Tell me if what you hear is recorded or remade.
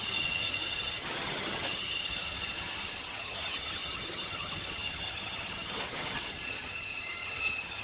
remade